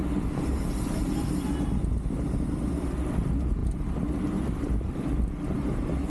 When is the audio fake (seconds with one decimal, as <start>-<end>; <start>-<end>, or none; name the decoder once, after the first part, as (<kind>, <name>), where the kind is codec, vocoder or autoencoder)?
none